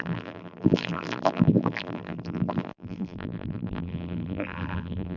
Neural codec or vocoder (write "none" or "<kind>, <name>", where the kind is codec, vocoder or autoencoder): vocoder, BigVGAN v2